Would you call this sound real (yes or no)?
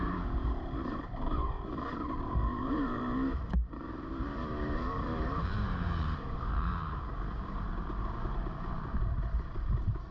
no